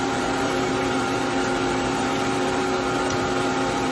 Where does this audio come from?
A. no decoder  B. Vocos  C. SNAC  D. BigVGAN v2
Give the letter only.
D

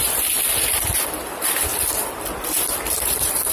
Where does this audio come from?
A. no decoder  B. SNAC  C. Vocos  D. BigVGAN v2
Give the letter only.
D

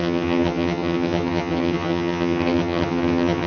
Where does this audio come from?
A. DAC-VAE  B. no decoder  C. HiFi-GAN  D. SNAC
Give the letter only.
C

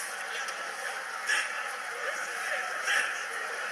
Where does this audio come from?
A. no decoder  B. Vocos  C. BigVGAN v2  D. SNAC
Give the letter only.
C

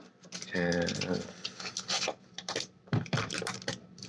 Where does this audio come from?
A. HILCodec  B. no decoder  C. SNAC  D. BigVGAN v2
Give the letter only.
D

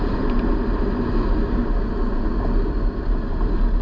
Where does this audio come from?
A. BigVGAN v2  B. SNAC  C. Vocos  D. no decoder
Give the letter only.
D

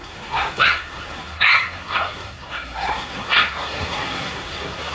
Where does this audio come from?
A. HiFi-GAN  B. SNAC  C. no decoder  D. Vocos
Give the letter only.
B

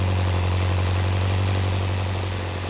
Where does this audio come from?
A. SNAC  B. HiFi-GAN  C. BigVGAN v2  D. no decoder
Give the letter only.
D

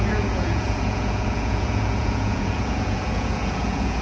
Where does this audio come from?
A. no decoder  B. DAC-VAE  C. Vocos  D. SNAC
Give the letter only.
C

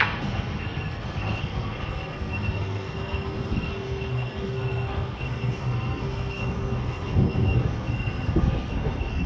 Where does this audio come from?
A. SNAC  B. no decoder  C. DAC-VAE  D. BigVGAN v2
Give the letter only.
A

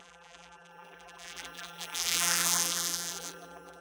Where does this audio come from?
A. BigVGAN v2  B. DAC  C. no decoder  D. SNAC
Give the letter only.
A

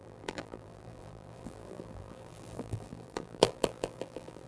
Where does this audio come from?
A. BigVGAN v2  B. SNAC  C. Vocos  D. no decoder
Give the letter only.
A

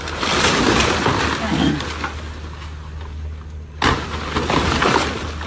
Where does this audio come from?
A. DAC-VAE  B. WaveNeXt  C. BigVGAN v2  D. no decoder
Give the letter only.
D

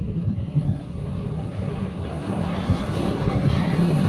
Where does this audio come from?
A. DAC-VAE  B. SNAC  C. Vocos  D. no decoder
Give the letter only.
B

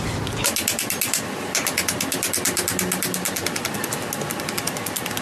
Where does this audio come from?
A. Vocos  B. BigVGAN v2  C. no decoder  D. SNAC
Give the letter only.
C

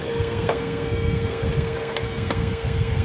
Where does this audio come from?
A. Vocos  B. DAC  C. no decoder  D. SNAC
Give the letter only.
D